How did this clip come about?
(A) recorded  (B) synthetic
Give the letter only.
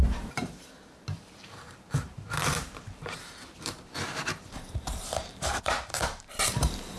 B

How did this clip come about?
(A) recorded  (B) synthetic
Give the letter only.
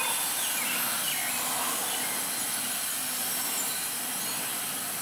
A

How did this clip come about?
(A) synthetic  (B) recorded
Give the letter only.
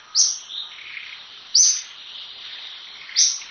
B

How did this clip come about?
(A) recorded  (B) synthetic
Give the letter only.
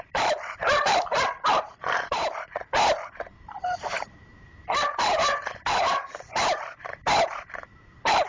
B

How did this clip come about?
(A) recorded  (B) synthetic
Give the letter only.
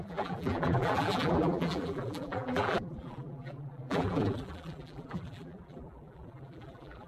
B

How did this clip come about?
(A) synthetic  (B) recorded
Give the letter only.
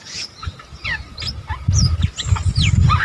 A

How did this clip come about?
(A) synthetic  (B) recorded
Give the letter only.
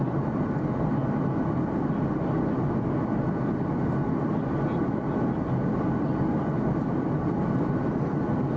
B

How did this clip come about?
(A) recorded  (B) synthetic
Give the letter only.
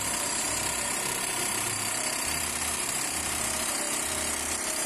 B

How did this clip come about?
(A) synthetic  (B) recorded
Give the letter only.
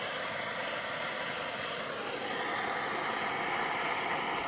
B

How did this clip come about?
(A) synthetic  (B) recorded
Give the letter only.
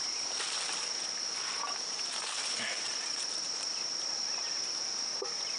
B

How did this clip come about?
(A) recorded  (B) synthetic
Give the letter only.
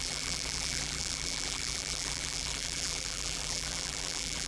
B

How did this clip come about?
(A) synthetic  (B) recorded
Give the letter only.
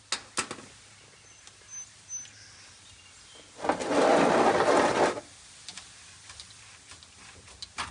B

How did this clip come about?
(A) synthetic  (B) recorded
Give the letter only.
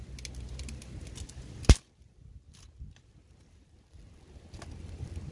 B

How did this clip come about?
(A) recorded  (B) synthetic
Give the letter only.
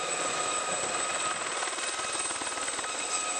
A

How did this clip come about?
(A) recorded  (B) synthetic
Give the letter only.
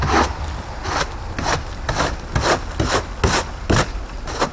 A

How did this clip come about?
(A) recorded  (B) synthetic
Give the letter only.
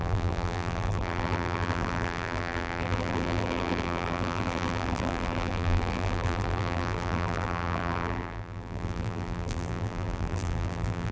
B